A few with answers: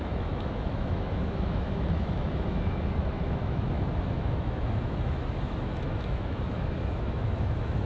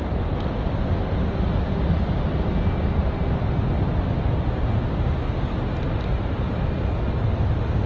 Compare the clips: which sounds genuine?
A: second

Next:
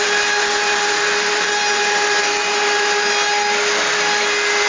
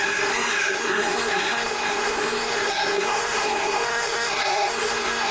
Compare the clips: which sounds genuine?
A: first